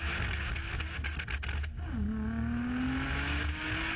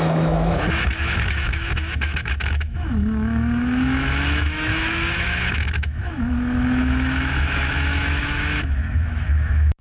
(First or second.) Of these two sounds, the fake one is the second